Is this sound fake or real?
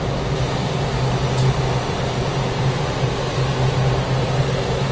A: real